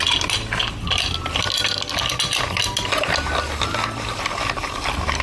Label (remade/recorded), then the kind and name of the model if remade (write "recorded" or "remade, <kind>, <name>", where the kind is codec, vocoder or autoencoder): recorded